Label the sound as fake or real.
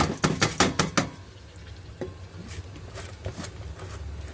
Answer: real